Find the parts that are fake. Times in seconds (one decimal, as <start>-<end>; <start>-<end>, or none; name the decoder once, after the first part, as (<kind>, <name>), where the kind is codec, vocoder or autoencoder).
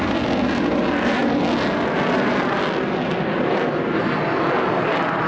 none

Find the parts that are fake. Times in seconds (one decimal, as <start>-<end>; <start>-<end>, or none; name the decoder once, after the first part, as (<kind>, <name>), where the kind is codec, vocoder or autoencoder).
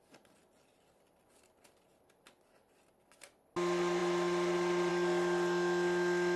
none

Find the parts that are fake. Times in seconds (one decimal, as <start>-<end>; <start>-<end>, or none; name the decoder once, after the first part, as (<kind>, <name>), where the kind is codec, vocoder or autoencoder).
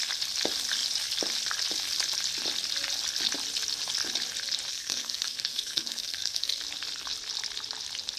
4.7-6.6 (codec, SNAC)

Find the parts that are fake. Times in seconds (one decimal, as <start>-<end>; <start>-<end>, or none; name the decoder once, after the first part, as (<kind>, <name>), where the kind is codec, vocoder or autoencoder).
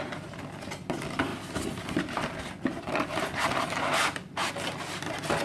none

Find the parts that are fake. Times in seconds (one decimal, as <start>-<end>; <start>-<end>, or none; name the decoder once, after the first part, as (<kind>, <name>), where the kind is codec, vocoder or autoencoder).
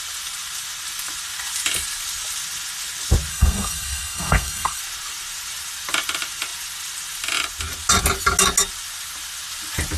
3.3-4.8 (codec, SNAC)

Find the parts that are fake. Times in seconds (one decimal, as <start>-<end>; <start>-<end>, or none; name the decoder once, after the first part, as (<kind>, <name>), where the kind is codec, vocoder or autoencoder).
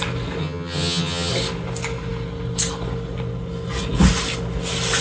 0.4-1.3 (vocoder, HiFi-GAN)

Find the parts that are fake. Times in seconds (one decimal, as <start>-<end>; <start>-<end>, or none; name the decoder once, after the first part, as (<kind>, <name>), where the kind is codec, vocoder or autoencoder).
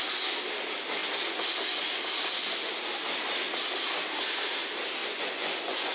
5.0-5.9 (vocoder, Vocos)